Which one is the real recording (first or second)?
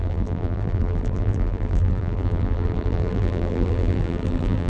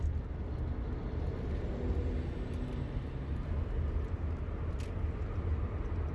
second